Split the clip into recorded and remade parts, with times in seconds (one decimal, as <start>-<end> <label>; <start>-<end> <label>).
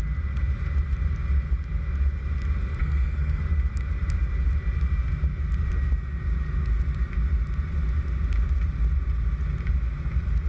0.0-2.8 recorded; 2.8-3.4 remade; 3.4-10.5 recorded